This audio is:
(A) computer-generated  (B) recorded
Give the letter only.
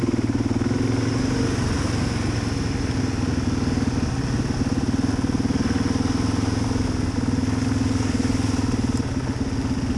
B